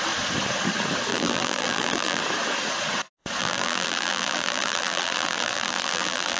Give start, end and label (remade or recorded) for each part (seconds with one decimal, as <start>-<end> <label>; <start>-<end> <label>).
0.0-1.1 recorded; 1.1-2.2 remade; 2.2-3.4 recorded; 3.4-6.4 remade